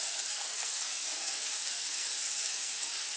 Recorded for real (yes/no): no